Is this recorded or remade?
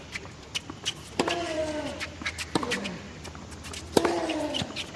recorded